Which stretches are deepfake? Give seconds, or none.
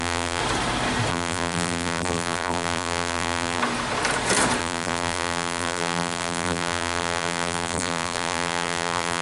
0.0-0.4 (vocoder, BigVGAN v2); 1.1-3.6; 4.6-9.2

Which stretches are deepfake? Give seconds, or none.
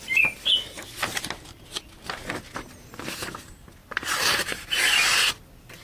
3.8-5.3 (vocoder, BigVGAN v2)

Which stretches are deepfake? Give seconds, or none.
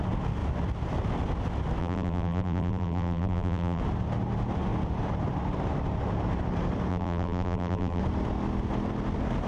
1.8-3.8 (vocoder, BigVGAN v2); 6.9-8.0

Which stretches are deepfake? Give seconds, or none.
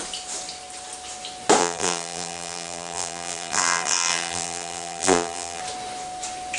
1.6-5.6 (vocoder, BigVGAN v2)